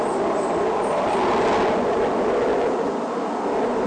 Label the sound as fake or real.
real